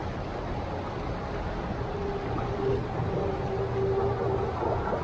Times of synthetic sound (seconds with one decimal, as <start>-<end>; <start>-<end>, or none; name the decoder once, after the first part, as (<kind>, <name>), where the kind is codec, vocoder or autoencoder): none